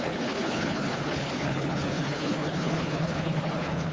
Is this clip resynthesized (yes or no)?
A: yes